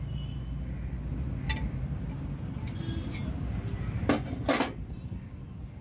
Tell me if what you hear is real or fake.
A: real